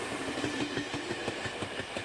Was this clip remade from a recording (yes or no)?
no